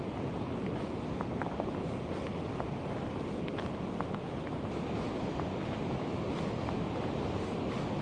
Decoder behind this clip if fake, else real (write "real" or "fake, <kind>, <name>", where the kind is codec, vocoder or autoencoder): real